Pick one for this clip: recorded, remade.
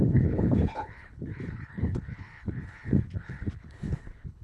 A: remade